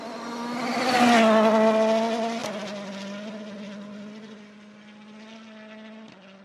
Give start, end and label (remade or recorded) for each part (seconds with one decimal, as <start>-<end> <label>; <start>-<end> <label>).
0.0-6.4 recorded